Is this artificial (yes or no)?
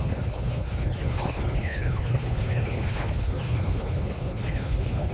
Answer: yes